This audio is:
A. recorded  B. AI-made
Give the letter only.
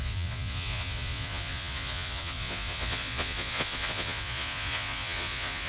B